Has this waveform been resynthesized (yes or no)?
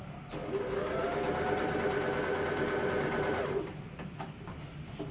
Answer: no